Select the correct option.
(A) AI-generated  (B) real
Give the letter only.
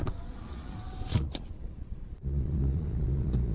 A